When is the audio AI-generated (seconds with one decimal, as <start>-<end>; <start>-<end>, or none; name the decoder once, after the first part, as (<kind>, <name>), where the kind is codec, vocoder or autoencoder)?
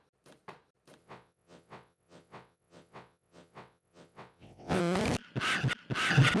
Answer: 1.0-4.8 (vocoder, WaveNeXt)